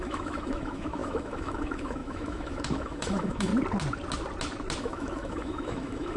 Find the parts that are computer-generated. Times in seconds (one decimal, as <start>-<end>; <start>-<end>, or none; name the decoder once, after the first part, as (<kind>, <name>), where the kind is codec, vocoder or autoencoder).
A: 0.0-3.5 (autoencoder, DAC-VAE); 4.8-6.2